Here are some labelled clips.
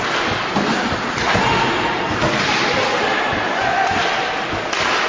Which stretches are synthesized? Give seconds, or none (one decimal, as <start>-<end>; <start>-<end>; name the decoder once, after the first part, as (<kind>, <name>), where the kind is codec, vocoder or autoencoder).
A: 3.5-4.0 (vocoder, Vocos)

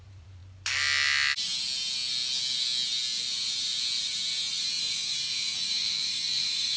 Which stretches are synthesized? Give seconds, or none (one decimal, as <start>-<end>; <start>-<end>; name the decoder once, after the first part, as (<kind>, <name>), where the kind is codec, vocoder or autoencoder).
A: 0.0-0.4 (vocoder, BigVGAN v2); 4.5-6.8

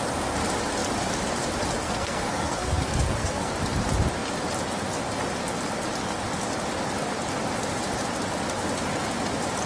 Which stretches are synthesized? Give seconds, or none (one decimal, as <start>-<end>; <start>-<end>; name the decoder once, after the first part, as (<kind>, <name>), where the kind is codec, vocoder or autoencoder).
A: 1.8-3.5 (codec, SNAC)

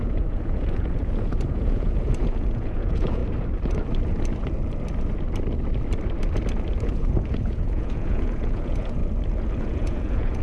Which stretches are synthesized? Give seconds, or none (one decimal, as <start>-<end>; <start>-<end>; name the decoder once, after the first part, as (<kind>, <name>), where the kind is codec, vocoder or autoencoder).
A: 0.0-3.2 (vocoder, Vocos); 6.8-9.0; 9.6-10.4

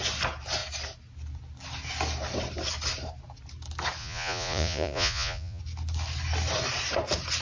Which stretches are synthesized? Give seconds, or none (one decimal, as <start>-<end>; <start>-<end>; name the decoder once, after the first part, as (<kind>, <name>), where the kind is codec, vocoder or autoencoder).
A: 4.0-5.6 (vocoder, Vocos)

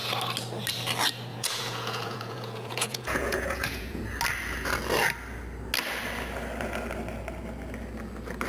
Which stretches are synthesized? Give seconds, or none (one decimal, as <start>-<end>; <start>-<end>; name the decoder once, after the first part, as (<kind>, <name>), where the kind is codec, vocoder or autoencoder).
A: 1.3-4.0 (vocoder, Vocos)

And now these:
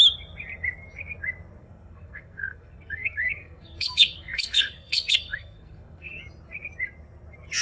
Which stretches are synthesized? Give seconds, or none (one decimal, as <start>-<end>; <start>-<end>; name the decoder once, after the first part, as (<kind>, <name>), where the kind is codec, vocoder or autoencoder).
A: 1.6-6.2 (codec, SNAC)

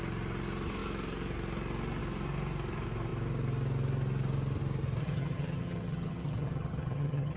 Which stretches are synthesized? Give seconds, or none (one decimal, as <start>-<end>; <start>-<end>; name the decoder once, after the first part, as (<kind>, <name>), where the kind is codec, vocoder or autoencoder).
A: 5.0-7.4 (vocoder, HiFi-GAN)